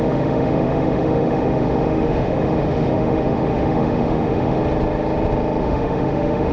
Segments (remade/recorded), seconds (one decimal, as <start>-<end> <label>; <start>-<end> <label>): 0.0-4.6 remade; 4.6-5.6 recorded; 5.6-6.5 remade